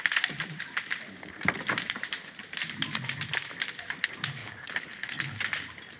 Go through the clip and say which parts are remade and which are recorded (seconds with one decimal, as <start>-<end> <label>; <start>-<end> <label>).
0.0-4.4 recorded; 4.4-5.4 remade; 5.4-6.0 recorded